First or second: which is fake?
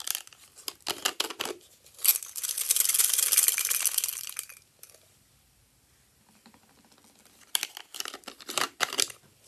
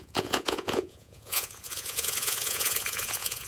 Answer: second